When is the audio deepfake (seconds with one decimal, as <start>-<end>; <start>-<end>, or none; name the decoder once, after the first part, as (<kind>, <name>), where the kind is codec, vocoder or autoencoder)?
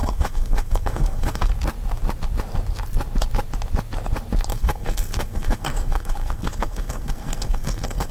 0.0-1.5 (codec, SNAC); 4.5-8.1